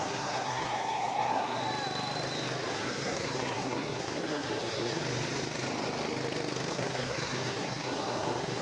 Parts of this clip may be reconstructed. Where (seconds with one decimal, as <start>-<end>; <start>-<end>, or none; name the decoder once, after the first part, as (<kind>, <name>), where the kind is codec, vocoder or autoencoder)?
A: 0.0-1.6 (codec, SNAC); 2.7-5.0; 6.7-8.6